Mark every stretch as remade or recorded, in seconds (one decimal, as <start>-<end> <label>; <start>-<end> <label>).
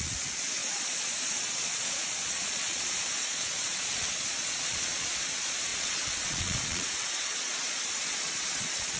0.0-9.0 remade